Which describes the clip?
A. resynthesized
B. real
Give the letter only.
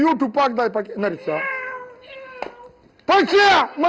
B